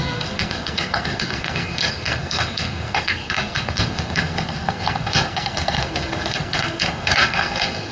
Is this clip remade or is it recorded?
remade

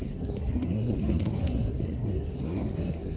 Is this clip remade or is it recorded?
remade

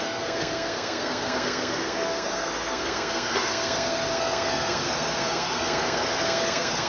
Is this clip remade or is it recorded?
remade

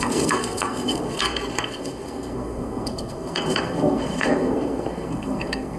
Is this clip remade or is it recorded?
remade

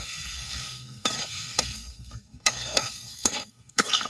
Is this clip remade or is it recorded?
remade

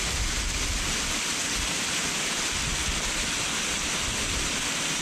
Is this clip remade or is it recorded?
recorded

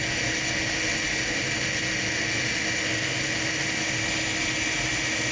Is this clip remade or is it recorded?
recorded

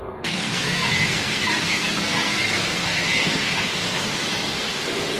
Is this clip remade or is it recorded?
remade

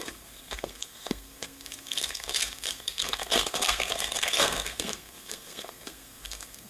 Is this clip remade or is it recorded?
remade